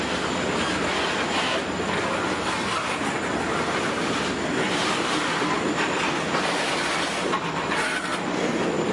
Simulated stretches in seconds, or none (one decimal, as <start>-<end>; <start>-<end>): none

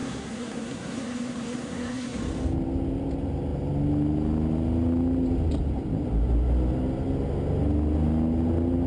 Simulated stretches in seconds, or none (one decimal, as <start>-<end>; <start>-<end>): 0.0-2.2